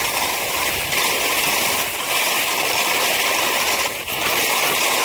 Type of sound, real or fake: real